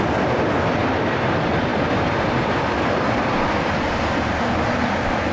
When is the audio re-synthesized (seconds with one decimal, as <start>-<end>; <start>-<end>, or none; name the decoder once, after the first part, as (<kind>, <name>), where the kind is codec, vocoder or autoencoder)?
none